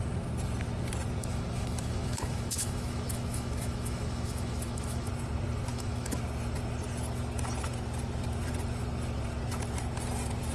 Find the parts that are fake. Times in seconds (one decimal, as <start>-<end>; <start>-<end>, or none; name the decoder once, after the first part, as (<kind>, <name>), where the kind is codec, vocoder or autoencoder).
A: 1.2-5.1 (autoencoder, DAC-VAE); 5.7-6.2